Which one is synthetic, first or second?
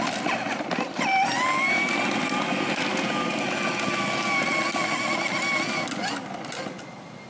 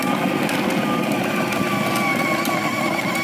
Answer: second